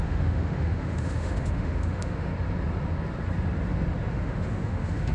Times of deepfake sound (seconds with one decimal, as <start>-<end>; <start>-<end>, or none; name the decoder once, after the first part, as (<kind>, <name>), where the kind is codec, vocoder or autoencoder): 0.0-2.3 (autoencoder, DAC-VAE); 4.1-5.1